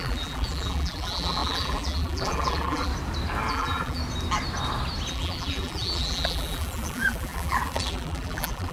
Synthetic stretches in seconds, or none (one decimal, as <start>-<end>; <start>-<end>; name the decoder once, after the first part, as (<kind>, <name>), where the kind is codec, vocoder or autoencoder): 0.0-2.9 (vocoder, BigVGAN v2); 3.5-4.0; 5.1-8.7